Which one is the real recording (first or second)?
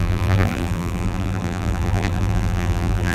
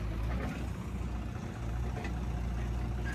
second